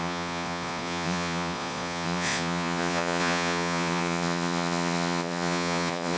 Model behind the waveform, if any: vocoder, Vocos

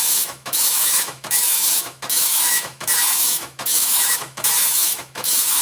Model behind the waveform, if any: autoencoder, DAC-VAE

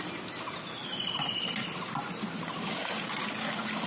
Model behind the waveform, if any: none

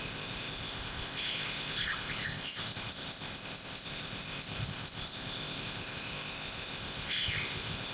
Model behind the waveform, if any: codec, ZipCodec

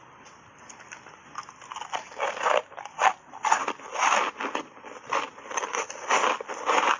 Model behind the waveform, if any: none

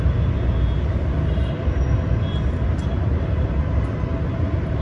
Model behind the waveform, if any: none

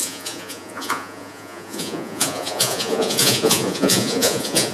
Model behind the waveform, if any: vocoder, Vocos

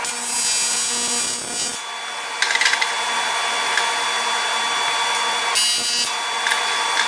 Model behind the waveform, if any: none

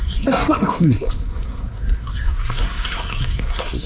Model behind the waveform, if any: codec, SNAC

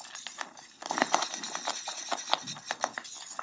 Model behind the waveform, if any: none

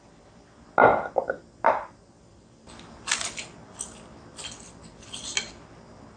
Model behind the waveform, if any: none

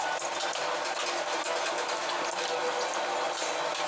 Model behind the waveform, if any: none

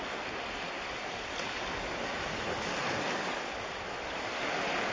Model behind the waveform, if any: none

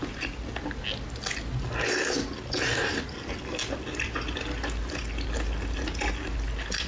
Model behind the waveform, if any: none